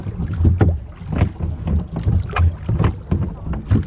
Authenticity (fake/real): real